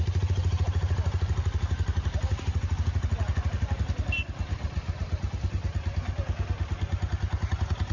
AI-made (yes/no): no